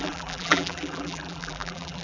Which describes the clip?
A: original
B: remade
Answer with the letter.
B